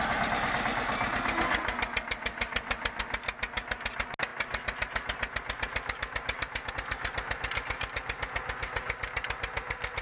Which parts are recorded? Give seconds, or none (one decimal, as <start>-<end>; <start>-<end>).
0.0-2.3; 3.0-10.0